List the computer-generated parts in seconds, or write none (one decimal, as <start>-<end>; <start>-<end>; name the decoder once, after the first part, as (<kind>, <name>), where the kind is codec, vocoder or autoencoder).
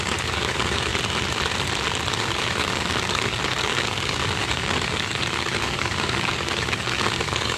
0.0-0.9 (codec, DAC); 2.1-7.6